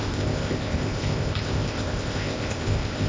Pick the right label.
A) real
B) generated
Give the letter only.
B